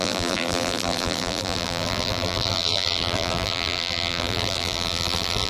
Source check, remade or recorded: remade